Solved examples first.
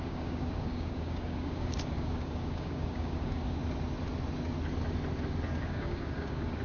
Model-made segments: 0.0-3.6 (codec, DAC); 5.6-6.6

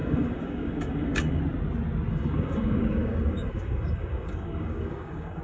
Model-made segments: 0.0-1.4 (codec, DAC); 2.1-5.4

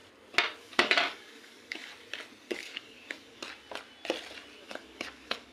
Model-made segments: 0.6-1.9 (codec, DAC); 2.4-3.4; 4.6-5.5

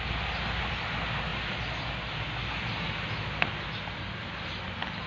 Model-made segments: none

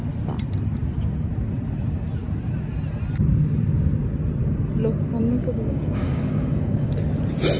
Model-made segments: 5.4-6.9 (codec, DAC)

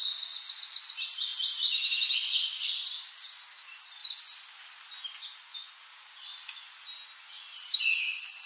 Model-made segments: none

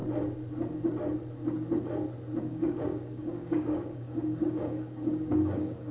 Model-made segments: 2.5-5.9 (codec, DAC)

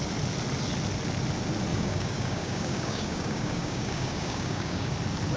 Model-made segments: 1.7-4.9 (codec, DAC)